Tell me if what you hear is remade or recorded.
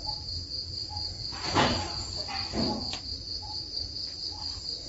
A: recorded